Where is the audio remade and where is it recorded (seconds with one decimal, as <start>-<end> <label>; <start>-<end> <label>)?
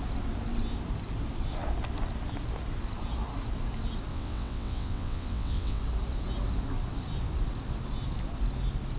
0.0-4.1 recorded; 4.1-5.8 remade; 5.8-9.0 recorded